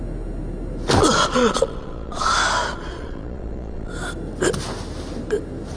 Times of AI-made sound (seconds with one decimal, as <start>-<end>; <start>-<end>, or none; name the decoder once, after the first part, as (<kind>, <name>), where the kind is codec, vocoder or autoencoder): 1.0-2.3 (vocoder, Vocos); 2.7-3.9